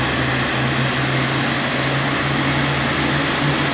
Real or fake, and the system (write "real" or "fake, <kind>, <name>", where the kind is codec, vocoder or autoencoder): real